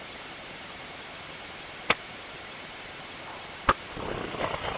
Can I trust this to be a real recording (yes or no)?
yes